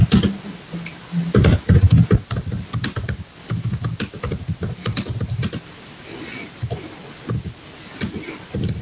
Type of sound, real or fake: real